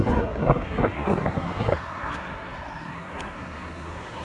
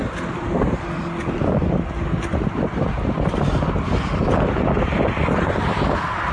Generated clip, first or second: first